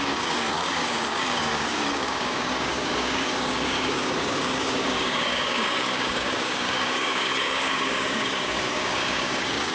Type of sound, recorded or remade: remade